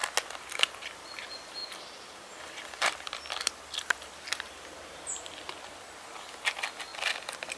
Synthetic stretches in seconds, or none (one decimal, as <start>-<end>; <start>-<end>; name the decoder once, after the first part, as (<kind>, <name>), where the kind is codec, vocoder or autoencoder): 0.6-1.6 (vocoder, BigVGAN v2); 2.3-6.9